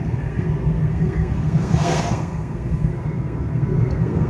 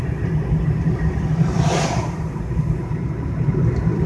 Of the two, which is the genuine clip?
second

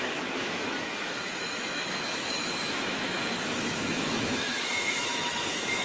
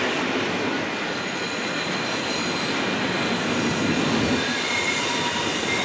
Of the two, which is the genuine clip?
second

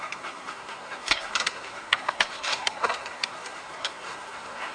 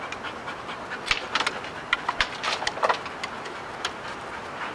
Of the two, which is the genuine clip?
second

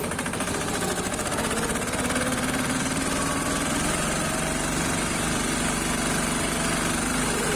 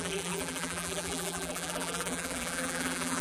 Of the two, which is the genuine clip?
first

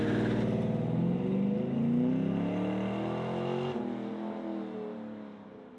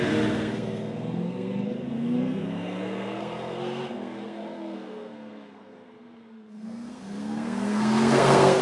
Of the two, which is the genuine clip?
first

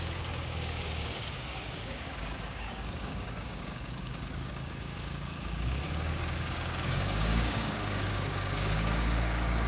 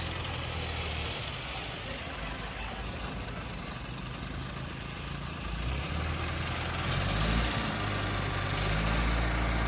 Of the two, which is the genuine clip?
second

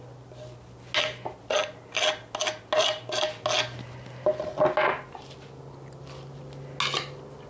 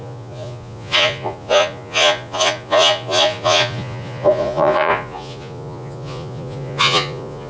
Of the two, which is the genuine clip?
first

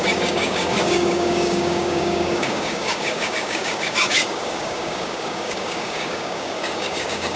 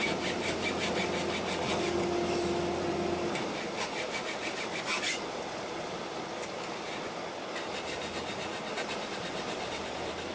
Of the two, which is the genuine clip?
second